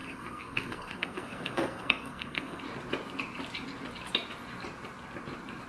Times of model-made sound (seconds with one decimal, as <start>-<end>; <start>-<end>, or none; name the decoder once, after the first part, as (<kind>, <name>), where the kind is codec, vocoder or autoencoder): 0.0-2.6 (codec, SNAC)